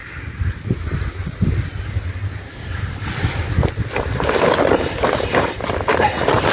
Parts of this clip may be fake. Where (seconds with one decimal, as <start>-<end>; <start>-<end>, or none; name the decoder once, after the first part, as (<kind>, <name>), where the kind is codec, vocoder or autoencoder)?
none